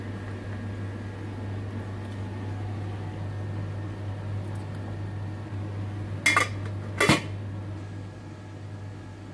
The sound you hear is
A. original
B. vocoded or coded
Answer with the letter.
A